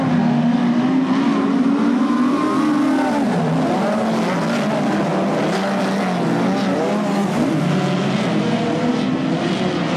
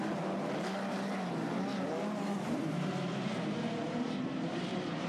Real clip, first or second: first